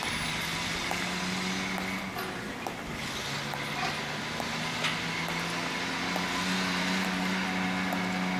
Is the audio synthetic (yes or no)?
no